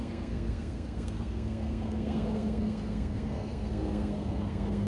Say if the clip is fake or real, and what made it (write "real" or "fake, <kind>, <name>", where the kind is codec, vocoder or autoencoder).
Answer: fake, codec, SNAC